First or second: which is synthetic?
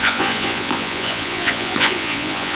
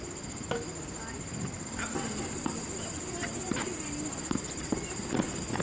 first